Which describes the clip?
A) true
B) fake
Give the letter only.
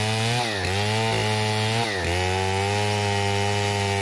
A